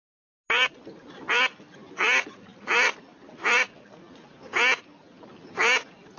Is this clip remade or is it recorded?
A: recorded